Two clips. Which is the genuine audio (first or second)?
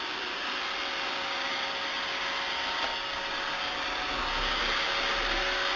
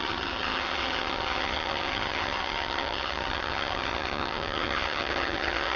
first